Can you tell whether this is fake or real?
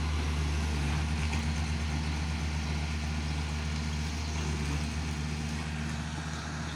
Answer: real